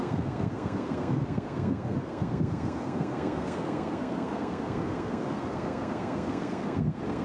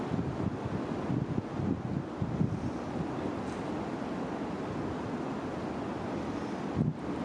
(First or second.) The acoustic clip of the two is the second